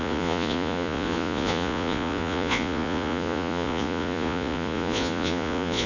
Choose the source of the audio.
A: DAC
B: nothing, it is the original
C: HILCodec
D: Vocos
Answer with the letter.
D